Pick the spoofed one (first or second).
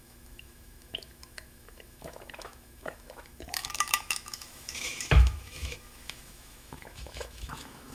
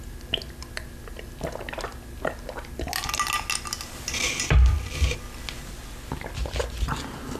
first